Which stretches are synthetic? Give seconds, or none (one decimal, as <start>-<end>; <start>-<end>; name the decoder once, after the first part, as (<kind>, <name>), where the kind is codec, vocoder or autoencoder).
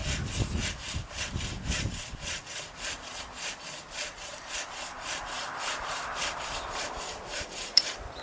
4.9-8.2 (vocoder, BigVGAN v2)